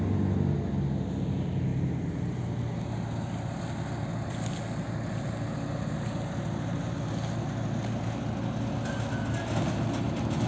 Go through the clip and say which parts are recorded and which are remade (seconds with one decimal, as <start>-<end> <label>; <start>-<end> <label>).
0.0-10.5 recorded